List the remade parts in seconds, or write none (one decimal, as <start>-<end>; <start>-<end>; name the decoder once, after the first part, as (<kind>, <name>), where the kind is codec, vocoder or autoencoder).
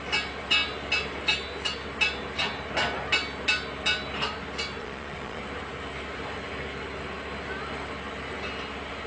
4.8-5.4 (vocoder, Vocos)